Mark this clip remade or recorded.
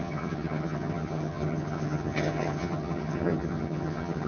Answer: remade